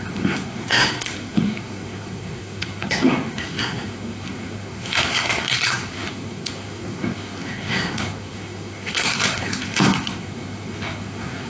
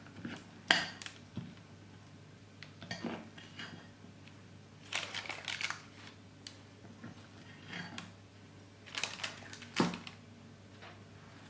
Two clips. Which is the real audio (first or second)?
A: second